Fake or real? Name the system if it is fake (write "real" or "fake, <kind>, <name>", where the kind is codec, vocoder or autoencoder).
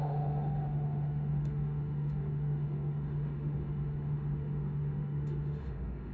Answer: fake, autoencoder, DAC-VAE